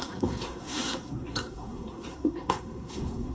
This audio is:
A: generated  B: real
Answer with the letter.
A